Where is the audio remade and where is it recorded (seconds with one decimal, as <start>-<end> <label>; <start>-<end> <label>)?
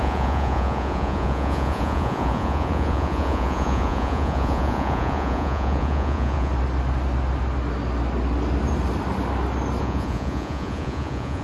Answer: 0.0-6.5 remade; 6.5-9.8 recorded; 9.8-11.4 remade